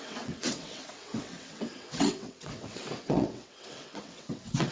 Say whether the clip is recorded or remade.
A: remade